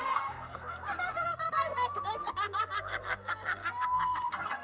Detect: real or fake fake